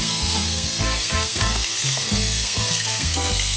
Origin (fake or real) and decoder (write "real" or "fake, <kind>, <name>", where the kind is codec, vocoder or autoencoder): fake, codec, SNAC